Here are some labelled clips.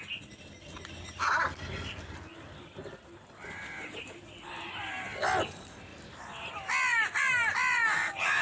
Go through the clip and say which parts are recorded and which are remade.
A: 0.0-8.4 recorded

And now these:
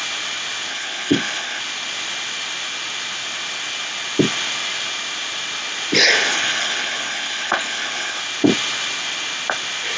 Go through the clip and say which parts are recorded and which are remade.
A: 0.0-0.7 recorded; 0.7-1.6 remade; 1.6-6.0 recorded; 6.0-8.2 remade; 8.2-10.0 recorded

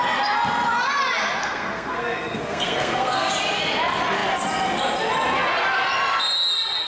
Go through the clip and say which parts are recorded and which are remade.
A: 0.0-1.4 recorded; 1.4-3.3 remade; 3.3-6.9 recorded

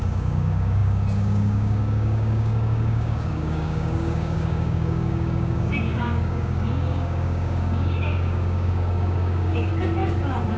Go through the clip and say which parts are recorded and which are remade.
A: 0.0-9.7 remade; 9.7-10.6 recorded

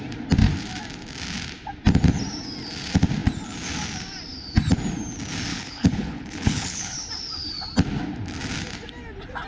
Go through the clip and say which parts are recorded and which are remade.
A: 0.0-5.5 recorded; 5.5-7.1 remade; 7.1-9.5 recorded

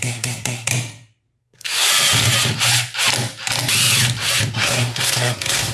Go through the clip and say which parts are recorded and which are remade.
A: 0.0-0.7 remade; 0.7-1.4 recorded; 1.4-1.9 remade; 1.9-4.5 recorded; 4.5-5.7 remade